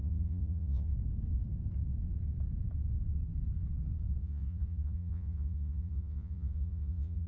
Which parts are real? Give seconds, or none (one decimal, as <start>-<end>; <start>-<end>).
0.9-4.2